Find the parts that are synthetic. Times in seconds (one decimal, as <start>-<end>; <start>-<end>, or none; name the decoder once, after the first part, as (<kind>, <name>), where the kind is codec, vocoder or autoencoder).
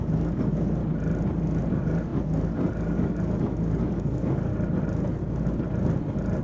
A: 0.0-0.8 (codec, DAC); 1.7-4.5